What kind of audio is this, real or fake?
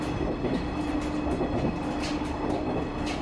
real